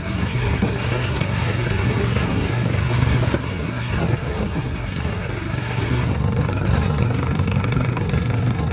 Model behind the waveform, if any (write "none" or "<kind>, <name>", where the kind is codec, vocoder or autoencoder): codec, SNAC